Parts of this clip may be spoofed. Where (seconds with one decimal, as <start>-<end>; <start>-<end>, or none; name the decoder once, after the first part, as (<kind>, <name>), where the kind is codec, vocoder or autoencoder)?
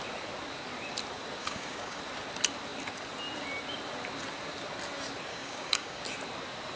1.4-2.0 (codec, DAC); 5.3-6.0